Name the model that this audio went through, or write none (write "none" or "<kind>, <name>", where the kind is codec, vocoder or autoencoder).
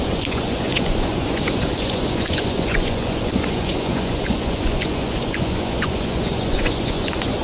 vocoder, Vocos